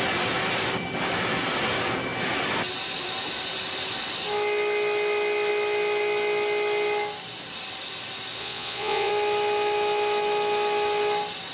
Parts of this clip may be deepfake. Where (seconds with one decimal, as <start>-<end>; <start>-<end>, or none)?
8.4-9.1